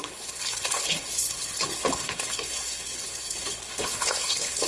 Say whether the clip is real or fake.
fake